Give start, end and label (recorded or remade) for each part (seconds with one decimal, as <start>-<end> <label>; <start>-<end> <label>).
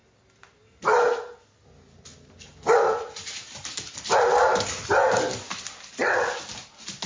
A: 0.0-7.1 recorded